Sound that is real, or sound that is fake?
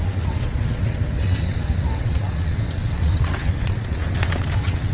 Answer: fake